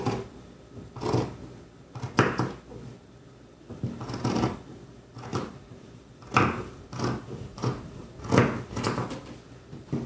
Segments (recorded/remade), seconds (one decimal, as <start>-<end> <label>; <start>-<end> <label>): 0.0-5.3 recorded; 5.3-6.1 remade; 6.1-7.5 recorded; 7.5-8.2 remade; 8.2-10.1 recorded